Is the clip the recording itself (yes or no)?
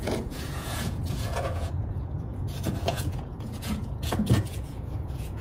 no